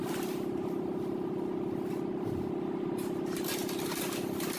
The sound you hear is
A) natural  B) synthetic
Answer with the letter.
B